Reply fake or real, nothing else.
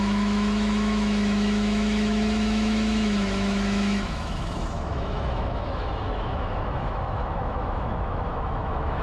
fake